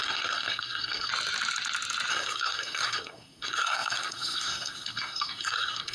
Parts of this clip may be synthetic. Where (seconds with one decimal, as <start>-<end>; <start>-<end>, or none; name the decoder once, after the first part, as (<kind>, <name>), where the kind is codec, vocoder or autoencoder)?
0.0-1.1 (codec, SNAC); 2.1-5.9